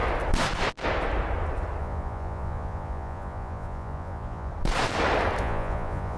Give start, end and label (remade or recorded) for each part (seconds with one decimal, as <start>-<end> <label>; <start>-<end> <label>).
0.0-1.8 recorded; 1.8-4.5 remade; 4.5-5.4 recorded; 5.4-6.2 remade